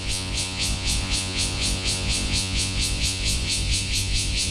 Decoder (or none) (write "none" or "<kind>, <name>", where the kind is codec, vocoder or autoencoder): vocoder, Vocos